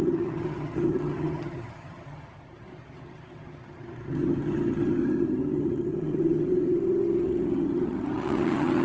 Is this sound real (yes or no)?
no